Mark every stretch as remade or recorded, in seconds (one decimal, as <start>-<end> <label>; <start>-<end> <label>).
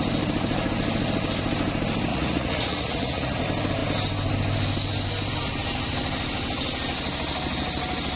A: 0.0-2.1 recorded; 2.1-3.4 remade; 3.4-8.2 recorded